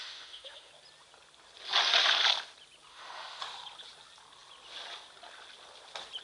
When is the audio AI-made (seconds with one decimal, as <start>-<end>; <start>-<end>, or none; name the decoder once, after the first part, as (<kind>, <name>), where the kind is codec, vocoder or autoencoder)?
0.0-0.7 (autoencoder, DAC-VAE); 2.9-3.4